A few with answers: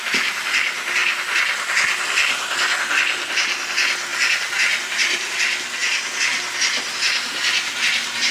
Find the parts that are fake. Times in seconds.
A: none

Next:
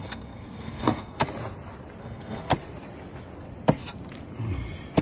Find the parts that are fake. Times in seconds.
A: 0.0-1.2; 2.0-2.5

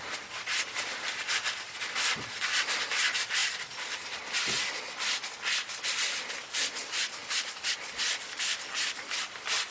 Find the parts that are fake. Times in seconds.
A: none

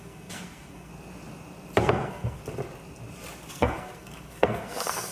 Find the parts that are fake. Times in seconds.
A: 0.0-0.9; 1.8-2.4; 3.5-5.1

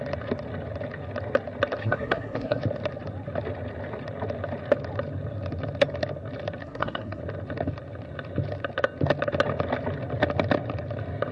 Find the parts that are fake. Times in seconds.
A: 1.8-2.6; 6.6-7.2